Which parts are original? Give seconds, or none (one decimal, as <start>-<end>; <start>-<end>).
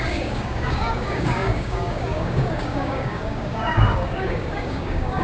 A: none